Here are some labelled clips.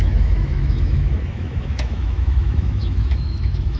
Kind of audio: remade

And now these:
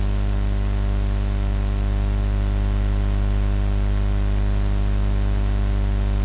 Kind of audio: recorded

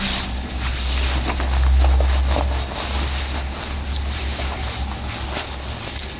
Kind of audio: recorded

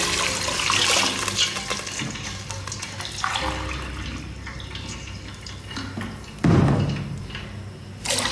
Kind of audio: recorded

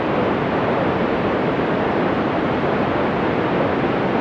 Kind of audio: recorded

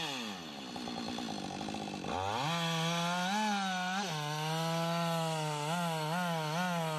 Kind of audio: recorded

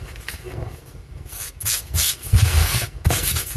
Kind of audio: remade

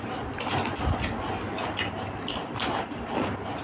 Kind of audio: recorded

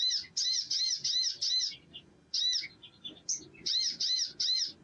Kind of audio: recorded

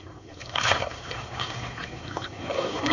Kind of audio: remade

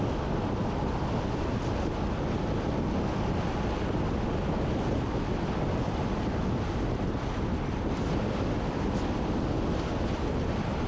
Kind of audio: recorded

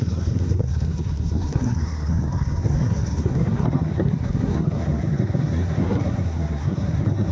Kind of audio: remade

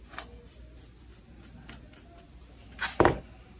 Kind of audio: recorded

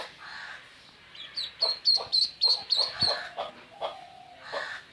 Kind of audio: recorded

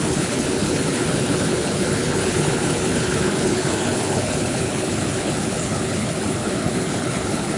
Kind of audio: remade